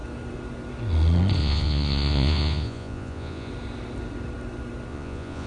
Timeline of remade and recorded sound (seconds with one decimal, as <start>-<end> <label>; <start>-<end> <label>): 0.0-1.4 recorded; 1.4-3.5 remade; 3.5-4.9 recorded; 4.9-5.5 remade